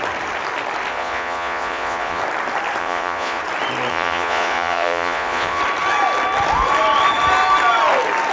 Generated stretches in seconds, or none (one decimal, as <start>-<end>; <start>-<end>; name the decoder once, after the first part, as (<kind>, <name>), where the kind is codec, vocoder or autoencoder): 0.9-2.2 (vocoder, Vocos); 2.8-3.4; 3.9-5.6